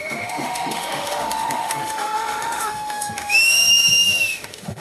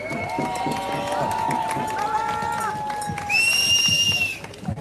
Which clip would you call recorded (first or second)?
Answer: second